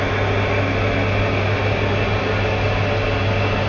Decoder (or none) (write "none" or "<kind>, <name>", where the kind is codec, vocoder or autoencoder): none